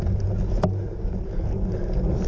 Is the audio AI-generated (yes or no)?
no